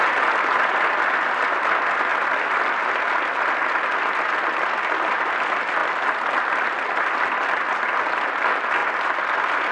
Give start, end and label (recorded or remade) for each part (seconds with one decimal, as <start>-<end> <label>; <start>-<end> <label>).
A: 0.0-2.1 recorded; 2.1-3.6 remade; 3.6-5.8 recorded; 5.8-7.1 remade; 7.1-8.8 recorded; 8.8-9.7 remade